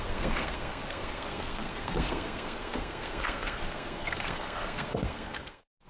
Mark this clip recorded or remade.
remade